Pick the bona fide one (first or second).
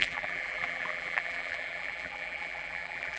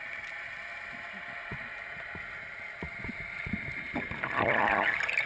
second